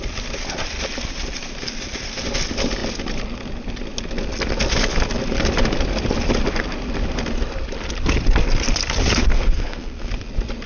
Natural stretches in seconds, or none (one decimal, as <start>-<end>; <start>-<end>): 0.0-9.3; 10.1-10.7